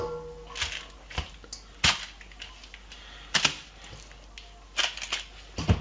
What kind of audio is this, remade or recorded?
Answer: recorded